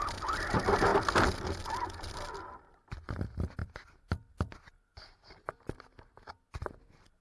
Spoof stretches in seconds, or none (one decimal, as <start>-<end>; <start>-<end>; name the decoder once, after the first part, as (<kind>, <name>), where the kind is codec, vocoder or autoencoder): none